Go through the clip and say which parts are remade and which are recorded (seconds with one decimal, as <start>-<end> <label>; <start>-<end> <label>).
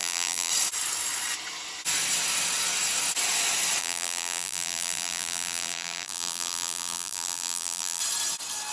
0.0-0.5 remade; 0.5-3.8 recorded; 3.8-8.0 remade; 8.0-8.7 recorded